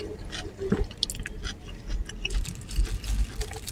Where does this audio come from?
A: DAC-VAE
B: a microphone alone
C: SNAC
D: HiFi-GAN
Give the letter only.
B